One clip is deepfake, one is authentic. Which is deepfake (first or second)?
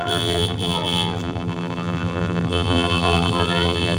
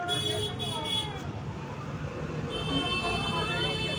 first